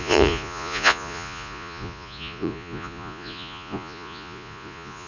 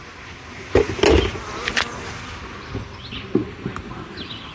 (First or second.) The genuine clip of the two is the second